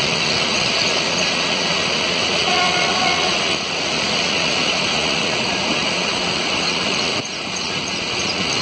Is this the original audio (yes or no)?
no